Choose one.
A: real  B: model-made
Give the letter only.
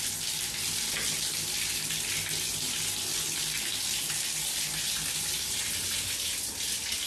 A